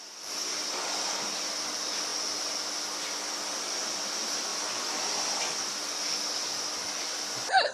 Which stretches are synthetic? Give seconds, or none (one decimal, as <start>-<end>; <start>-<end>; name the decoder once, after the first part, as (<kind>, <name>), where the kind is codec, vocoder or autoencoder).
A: none